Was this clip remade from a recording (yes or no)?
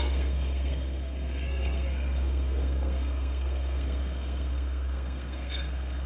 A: yes